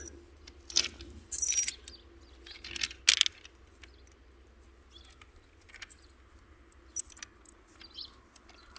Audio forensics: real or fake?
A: real